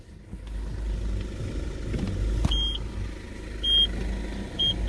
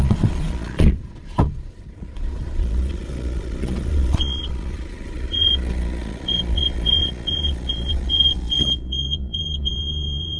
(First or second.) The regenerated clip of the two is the second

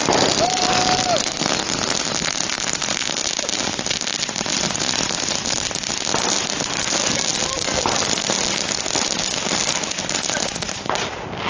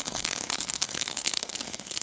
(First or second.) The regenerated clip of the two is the second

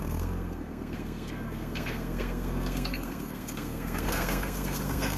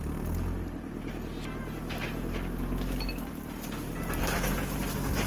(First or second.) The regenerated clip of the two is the first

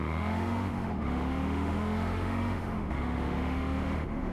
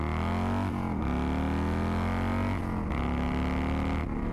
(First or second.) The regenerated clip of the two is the first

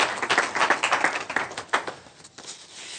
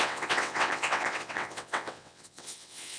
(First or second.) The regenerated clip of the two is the second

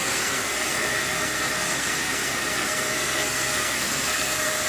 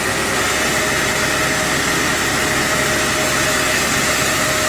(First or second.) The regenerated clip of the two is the first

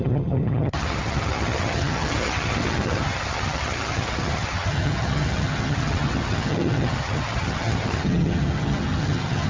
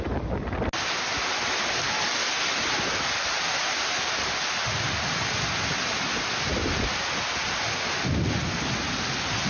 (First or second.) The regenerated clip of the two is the first